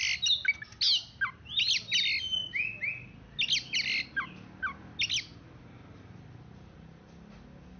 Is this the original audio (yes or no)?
yes